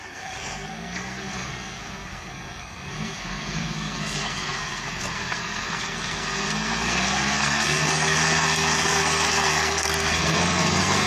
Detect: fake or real fake